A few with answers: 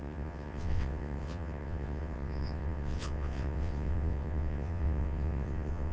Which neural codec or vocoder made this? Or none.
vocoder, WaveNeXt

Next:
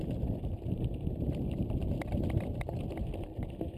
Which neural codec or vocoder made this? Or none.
vocoder, BigVGAN v2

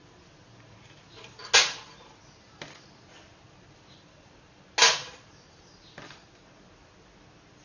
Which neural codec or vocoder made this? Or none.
none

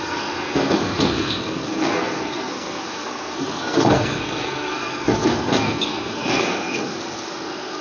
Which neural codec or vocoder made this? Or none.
codec, SNAC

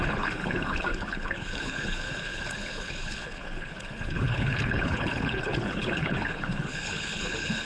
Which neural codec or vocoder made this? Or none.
codec, HILCodec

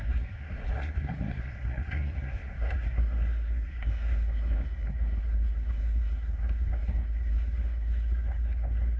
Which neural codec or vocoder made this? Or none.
codec, SNAC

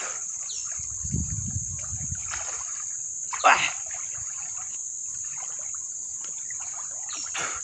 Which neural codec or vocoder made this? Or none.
none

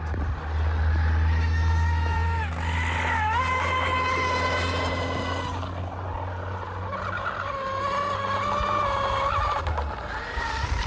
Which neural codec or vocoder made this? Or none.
none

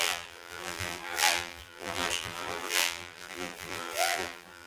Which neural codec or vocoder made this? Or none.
vocoder, BigVGAN v2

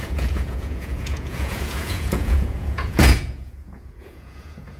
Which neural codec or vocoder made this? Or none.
vocoder, Vocos